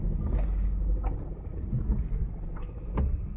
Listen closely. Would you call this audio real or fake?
real